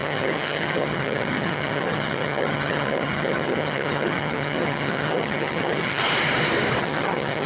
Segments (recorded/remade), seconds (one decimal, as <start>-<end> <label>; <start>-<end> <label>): 0.0-6.0 remade; 6.0-6.8 recorded; 6.8-7.5 remade